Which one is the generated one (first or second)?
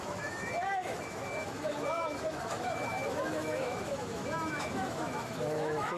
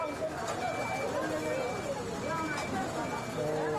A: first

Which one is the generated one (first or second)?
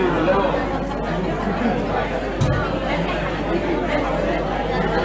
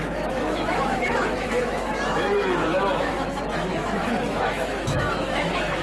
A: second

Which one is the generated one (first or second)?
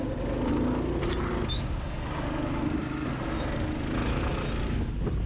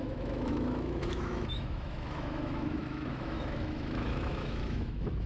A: second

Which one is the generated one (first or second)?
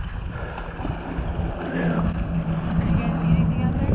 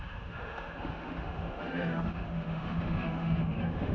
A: second